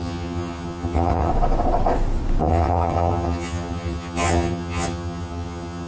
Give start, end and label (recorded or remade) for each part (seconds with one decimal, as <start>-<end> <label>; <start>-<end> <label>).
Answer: 0.0-1.3 remade; 1.3-2.4 recorded; 2.4-5.9 remade